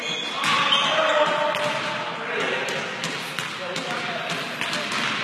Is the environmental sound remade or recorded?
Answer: recorded